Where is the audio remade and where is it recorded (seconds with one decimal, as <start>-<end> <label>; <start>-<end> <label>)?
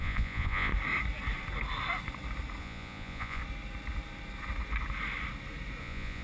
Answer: 0.0-0.7 remade; 0.7-2.6 recorded; 2.6-3.4 remade; 3.4-5.8 recorded; 5.8-6.2 remade